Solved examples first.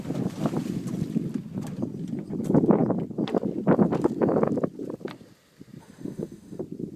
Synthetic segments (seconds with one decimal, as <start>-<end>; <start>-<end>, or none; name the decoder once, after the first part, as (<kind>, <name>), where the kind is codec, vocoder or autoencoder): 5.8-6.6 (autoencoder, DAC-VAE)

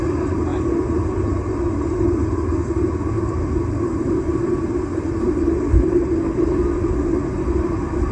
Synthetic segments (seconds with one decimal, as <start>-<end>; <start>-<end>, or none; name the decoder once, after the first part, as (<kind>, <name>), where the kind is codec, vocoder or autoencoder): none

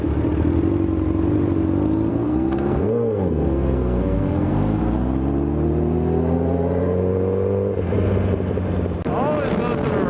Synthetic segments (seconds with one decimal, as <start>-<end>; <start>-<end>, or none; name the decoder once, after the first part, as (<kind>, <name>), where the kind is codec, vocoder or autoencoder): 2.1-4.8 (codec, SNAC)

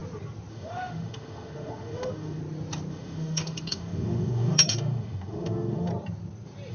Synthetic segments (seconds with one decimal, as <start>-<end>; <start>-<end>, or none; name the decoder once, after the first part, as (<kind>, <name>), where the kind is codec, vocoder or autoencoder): 0.5-2.4 (autoencoder, DAC-VAE); 2.9-5.9